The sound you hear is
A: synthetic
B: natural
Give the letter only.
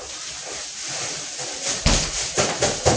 B